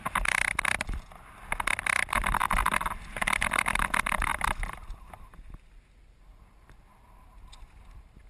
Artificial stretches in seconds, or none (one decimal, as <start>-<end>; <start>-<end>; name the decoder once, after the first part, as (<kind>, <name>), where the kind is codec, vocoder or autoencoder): none